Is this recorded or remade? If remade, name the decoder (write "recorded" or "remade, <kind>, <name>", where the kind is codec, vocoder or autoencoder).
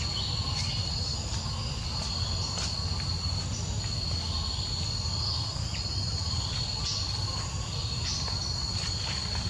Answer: recorded